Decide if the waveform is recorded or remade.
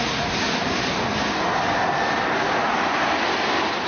recorded